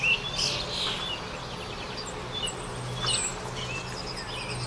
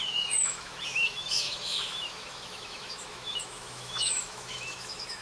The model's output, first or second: second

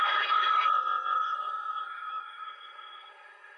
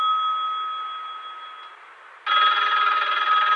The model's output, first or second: first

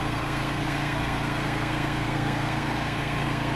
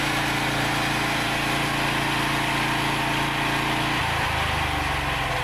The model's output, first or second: first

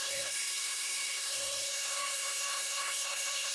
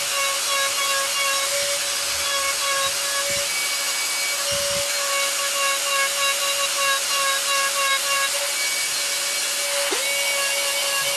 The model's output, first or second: first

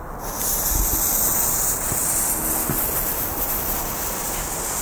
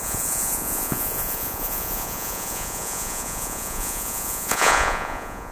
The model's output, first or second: second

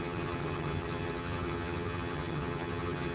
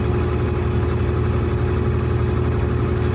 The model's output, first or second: first